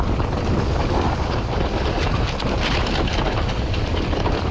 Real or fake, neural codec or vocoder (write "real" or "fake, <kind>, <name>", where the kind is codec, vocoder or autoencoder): real